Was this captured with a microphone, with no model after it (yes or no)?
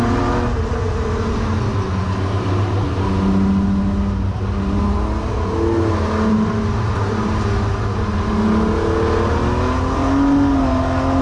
yes